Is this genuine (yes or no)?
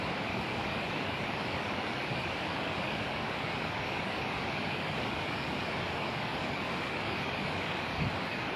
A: no